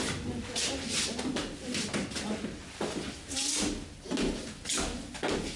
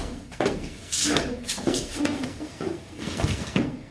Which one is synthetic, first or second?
second